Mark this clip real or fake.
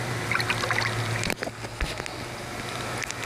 real